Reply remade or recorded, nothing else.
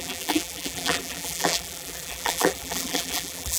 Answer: remade